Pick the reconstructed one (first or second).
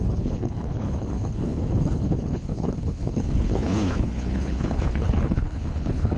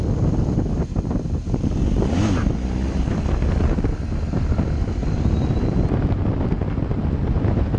first